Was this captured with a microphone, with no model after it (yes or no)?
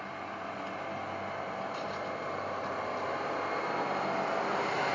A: yes